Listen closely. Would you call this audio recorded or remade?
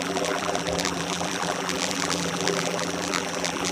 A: remade